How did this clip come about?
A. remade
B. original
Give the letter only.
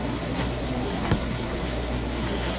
A